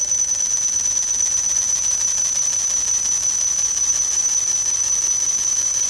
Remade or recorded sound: recorded